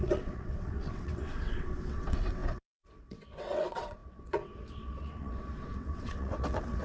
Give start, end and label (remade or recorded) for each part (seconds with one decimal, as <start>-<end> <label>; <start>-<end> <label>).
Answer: 0.0-6.8 remade